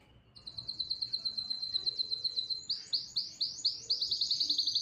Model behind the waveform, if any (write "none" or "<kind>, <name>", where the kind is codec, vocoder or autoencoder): none